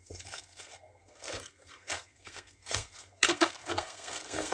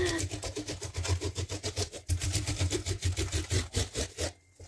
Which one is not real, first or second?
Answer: first